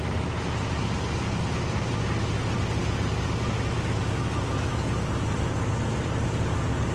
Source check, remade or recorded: recorded